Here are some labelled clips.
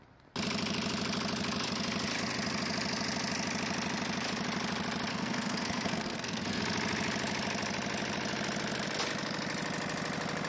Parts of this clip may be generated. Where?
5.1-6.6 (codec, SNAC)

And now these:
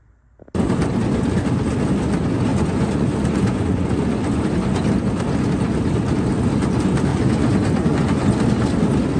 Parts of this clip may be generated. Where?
2.5-4.5 (vocoder, Vocos); 7.1-8.3

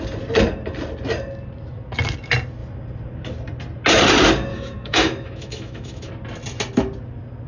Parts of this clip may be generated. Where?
4.5-6.1 (autoencoder, DAC-VAE)

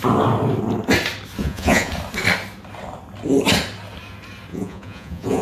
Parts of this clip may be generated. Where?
1.4-1.9 (vocoder, Vocos); 4.5-5.4

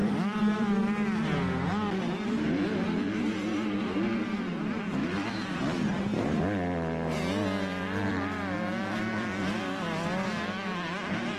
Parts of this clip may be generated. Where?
0.0-0.8 (vocoder, BigVGAN v2)

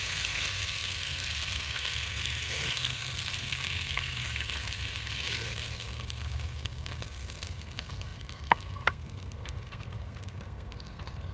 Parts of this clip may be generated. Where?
0.0-11.3 (codec, SNAC)